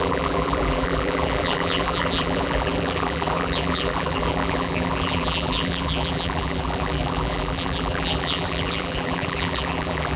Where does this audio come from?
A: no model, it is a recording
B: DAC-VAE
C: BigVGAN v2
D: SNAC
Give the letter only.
C